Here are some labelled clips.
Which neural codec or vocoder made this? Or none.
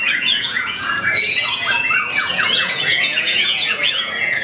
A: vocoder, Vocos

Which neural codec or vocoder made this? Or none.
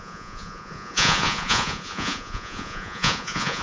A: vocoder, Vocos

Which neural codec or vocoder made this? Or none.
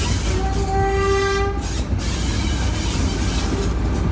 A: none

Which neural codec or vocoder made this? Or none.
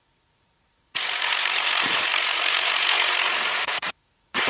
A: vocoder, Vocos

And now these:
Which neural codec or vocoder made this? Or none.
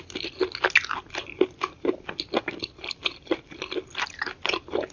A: none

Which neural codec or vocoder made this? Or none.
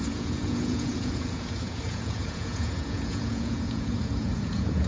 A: vocoder, Vocos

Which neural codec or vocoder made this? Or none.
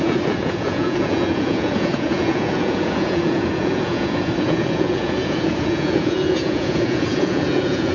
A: vocoder, Vocos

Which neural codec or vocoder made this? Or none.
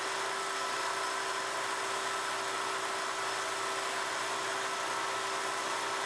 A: none